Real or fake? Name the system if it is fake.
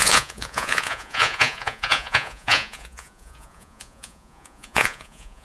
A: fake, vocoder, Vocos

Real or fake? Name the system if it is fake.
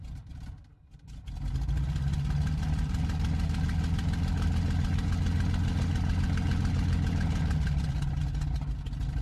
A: real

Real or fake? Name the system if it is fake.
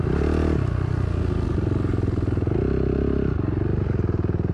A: real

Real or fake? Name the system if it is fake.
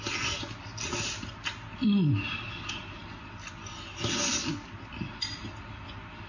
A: real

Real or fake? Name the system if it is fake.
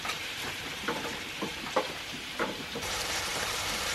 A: fake, vocoder, BigVGAN v2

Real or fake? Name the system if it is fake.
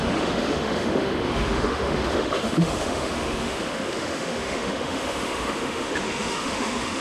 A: fake, autoencoder, DAC-VAE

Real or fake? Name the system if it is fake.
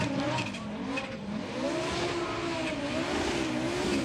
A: real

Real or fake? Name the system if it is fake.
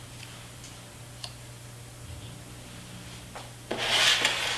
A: real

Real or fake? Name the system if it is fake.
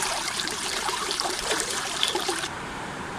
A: fake, vocoder, BigVGAN v2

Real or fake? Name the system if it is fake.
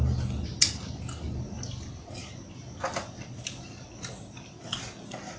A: real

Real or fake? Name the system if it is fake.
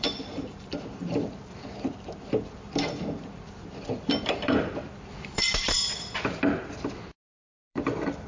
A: fake, vocoder, BigVGAN v2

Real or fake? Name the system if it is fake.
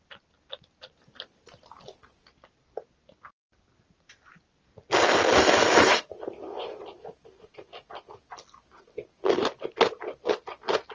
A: real